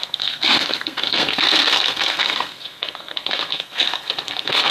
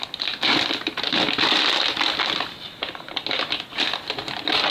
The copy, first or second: first